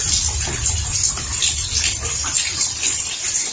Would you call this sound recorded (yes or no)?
yes